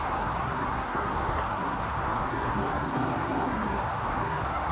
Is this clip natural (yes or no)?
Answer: no